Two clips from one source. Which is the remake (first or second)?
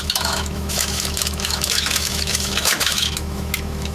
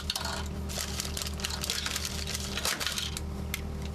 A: first